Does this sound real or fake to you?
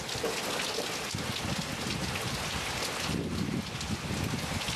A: real